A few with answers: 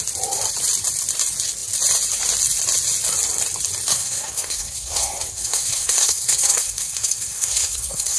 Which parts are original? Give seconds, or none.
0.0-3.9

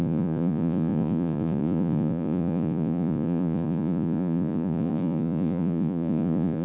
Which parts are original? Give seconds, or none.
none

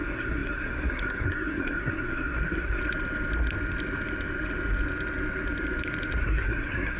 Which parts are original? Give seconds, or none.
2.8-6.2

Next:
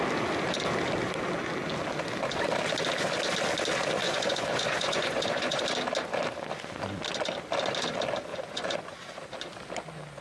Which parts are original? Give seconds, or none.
0.0-4.0; 5.6-8.3; 9.2-10.2

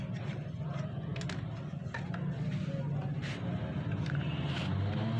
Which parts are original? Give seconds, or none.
0.0-5.2

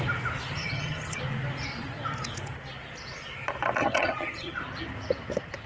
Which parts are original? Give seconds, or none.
0.0-0.6; 1.2-3.8; 4.6-5.7